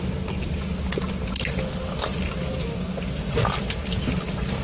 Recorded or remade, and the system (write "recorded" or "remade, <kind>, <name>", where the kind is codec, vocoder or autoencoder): recorded